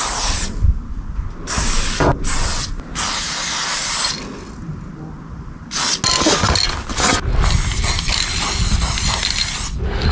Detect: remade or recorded recorded